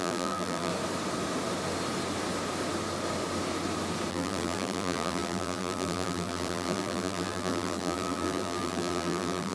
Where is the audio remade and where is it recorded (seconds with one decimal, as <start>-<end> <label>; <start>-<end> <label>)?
0.0-0.7 remade; 0.7-4.1 recorded; 4.1-9.5 remade